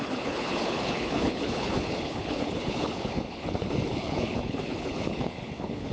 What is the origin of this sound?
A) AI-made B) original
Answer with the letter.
A